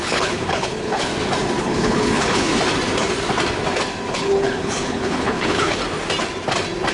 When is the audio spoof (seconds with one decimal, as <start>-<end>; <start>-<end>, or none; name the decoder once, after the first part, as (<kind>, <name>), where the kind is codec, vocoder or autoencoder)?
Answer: 0.0-1.1 (codec, HILCodec); 1.6-2.5; 4.1-5.8